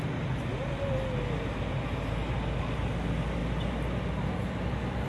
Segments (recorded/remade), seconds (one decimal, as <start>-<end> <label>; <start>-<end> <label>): 0.0-5.1 recorded